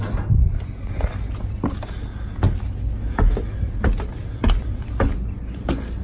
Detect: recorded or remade recorded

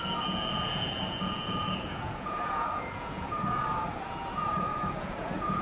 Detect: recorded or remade remade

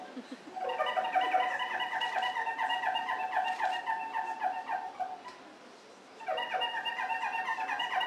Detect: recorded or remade recorded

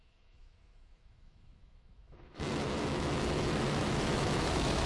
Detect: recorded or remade remade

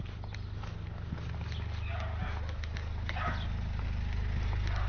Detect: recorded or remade recorded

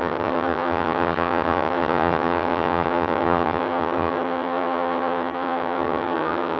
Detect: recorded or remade remade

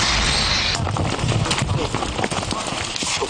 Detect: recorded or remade recorded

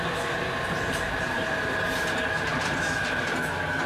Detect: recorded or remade recorded